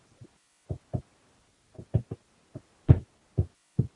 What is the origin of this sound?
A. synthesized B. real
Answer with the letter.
B